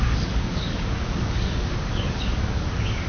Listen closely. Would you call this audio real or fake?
fake